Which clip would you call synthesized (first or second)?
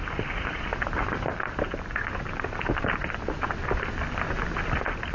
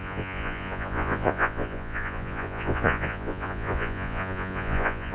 second